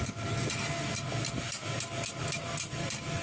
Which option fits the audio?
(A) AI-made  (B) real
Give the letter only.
B